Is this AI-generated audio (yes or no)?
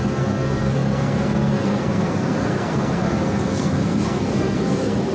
yes